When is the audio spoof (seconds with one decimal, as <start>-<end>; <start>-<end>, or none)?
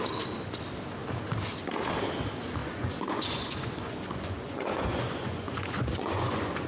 2.6-6.7